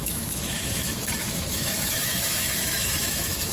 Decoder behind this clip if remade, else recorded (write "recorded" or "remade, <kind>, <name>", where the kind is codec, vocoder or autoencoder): remade, autoencoder, DAC-VAE